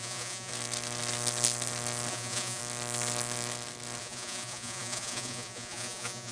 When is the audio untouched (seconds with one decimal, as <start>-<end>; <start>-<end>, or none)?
0.5-2.1; 2.6-4.0